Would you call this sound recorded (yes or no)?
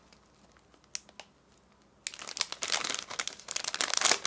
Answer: yes